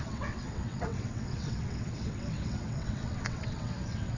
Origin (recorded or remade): remade